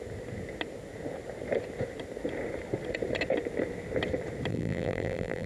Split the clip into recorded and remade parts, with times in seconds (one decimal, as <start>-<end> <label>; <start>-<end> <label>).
0.0-4.5 recorded; 4.5-5.5 remade